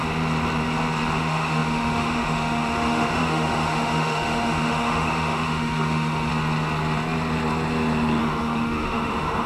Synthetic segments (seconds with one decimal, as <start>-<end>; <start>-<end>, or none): 1.2-6.3; 8.2-9.5